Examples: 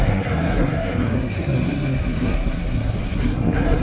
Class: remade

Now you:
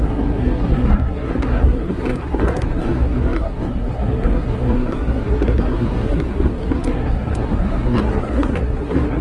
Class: remade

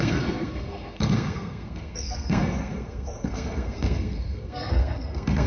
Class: remade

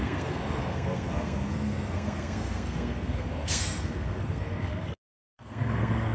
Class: remade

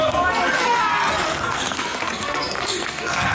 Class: remade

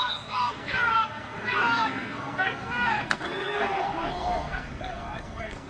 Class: remade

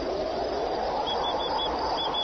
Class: recorded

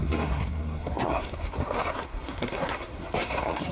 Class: remade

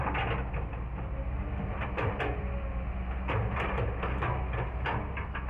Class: recorded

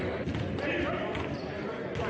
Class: recorded